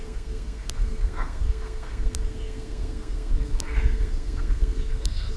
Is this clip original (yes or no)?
no